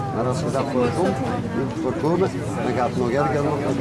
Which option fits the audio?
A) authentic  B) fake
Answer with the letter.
A